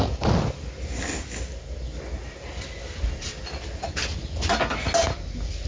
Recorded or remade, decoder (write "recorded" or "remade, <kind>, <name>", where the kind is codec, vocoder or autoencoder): recorded